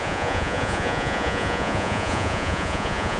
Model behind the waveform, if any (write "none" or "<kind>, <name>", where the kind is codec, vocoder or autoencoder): vocoder, Vocos